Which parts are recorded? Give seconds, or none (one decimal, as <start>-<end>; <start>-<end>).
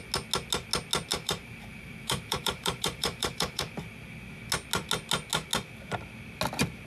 0.0-1.1; 3.6-6.9